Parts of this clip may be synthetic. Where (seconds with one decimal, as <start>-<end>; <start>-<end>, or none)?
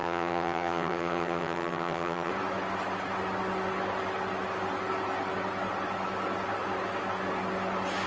0.0-2.3